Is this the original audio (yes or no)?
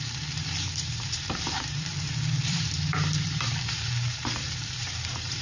no